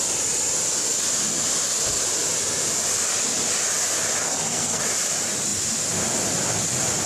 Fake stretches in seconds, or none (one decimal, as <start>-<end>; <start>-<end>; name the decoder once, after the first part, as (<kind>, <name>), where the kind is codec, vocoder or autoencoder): 4.2-4.8 (codec, SNAC)